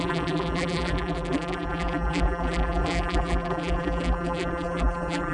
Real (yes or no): no